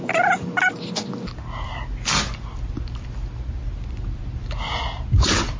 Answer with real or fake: real